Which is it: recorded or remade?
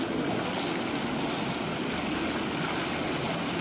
recorded